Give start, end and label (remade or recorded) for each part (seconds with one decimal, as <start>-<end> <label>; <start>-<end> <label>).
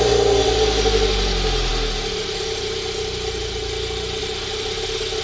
0.0-5.2 recorded